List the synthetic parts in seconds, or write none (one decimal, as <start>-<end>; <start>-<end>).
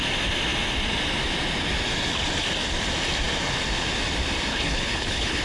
4.5-5.4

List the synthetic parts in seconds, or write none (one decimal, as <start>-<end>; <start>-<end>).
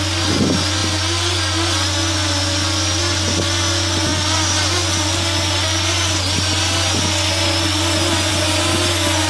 none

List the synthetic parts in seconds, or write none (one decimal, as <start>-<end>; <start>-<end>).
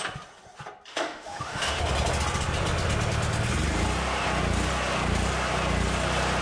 0.9-1.8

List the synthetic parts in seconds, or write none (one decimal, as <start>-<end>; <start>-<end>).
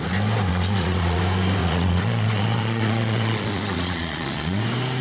0.5-1.2; 1.6-4.6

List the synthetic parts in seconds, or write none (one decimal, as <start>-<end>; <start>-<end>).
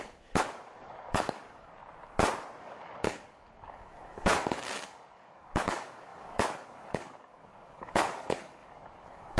0.0-1.8; 2.6-9.4